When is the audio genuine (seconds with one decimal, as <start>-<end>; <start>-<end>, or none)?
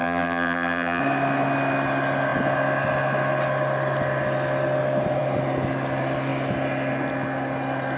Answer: 1.0-8.0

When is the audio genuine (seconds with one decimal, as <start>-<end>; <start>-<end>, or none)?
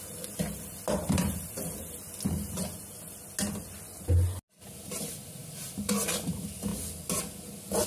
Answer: 0.0-7.9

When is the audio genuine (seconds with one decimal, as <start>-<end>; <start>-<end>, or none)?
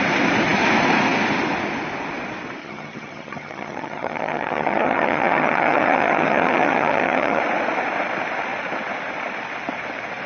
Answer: 0.0-2.6; 7.4-10.3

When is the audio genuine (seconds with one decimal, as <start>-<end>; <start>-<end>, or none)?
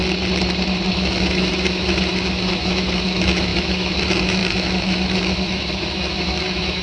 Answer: 0.0-0.9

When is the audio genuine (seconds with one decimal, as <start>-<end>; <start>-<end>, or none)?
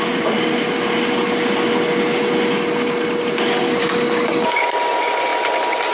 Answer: 0.0-3.8; 4.6-5.9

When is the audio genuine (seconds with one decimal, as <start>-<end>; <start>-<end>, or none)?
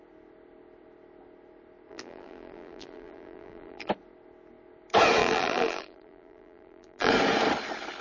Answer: 0.0-1.9; 3.9-5.2; 7.1-8.0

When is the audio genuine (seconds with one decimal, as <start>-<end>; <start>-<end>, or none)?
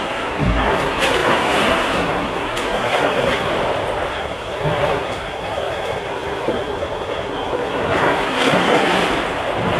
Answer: 3.5-4.1; 9.0-9.8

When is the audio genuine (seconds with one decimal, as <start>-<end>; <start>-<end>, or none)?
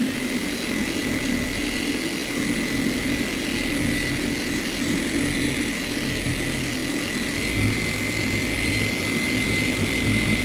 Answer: 0.0-10.4